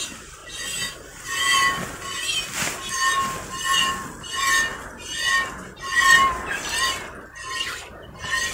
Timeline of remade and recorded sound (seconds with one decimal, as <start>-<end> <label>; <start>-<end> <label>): 0.0-8.5 recorded